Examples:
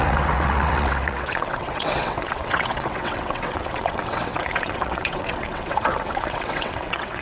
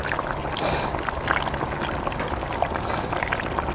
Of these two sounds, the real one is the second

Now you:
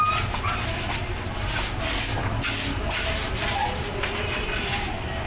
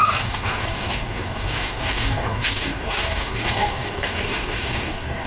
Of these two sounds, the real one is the first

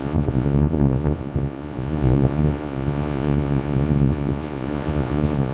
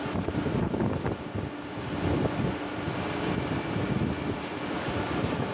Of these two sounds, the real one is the second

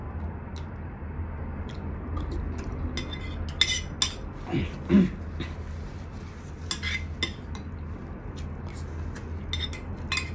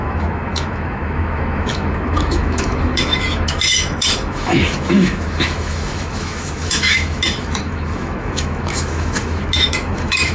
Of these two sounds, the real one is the first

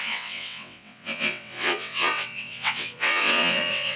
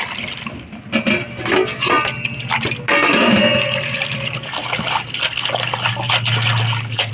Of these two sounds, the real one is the second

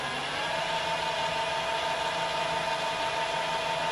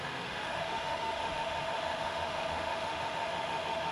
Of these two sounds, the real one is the first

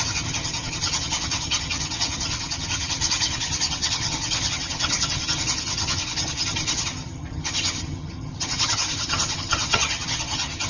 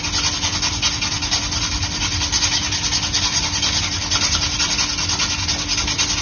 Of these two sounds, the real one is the second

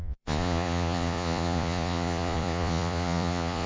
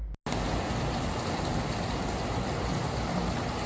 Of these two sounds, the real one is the second